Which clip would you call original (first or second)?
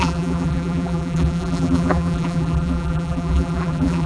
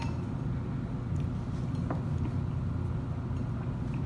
second